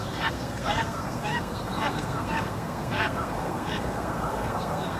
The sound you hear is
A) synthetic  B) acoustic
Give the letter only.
A